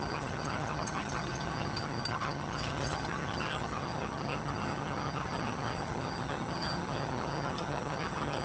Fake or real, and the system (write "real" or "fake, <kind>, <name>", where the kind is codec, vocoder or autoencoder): fake, vocoder, HiFi-GAN